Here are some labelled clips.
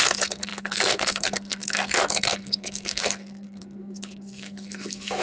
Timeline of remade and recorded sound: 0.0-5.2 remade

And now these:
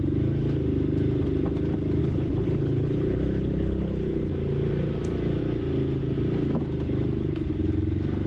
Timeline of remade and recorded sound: 0.0-2.0 recorded; 2.0-4.3 remade; 4.3-8.3 recorded